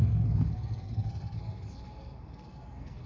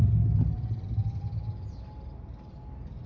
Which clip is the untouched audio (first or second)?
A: second